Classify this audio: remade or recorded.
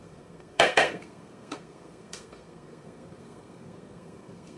remade